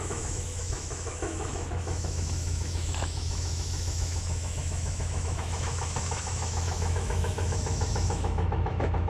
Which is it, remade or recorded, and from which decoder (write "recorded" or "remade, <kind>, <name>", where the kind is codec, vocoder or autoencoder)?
remade, autoencoder, DAC-VAE